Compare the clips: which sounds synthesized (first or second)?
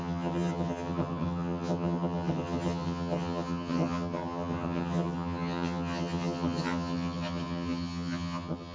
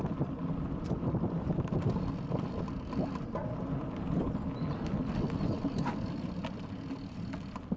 first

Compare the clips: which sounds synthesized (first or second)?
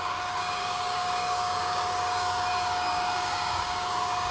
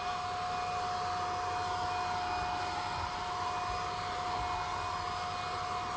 first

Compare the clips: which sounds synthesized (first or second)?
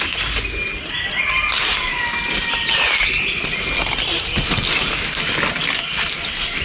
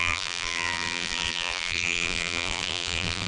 second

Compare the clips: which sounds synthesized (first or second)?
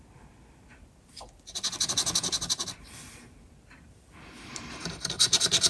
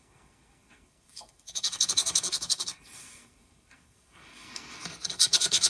second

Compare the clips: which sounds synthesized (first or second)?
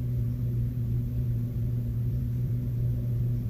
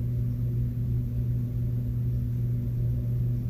first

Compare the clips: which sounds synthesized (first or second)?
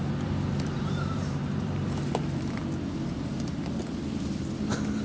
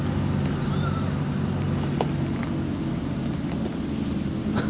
first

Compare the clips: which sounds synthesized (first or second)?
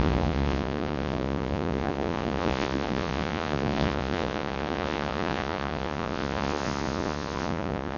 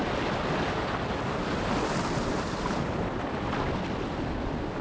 first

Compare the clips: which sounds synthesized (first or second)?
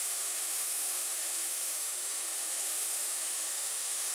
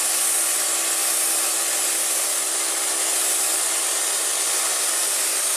first